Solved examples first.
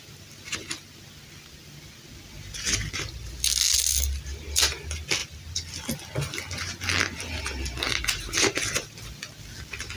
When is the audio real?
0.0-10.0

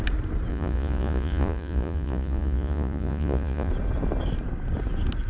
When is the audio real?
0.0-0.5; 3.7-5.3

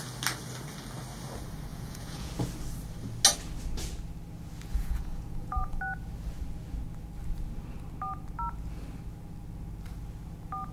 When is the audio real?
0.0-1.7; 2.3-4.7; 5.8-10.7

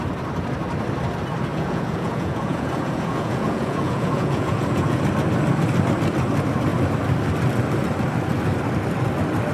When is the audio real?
0.0-1.5; 5.0-9.5

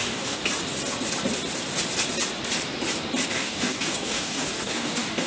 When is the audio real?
0.4-3.3

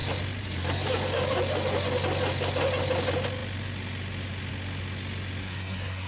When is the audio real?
0.0-5.4

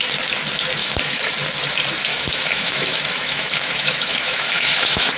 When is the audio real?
0.0-0.8; 1.3-2.1